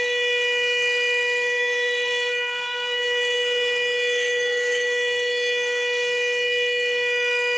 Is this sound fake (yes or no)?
yes